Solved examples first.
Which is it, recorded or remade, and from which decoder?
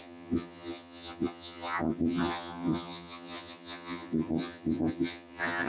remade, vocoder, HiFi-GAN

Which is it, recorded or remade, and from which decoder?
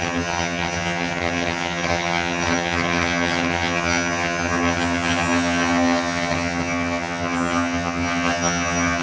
remade, vocoder, HiFi-GAN